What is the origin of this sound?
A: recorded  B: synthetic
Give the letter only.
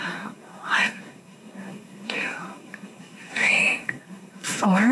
B